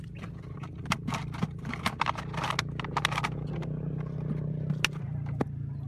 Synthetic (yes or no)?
no